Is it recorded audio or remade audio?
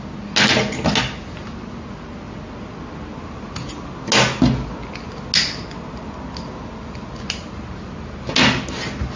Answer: recorded